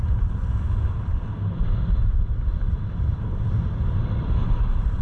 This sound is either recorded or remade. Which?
recorded